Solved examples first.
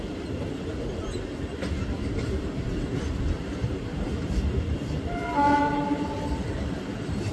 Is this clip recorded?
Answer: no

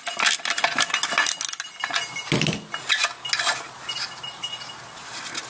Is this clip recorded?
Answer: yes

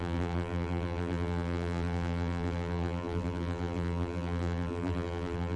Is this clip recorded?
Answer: no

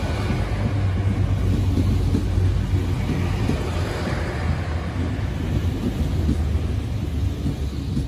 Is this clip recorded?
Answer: yes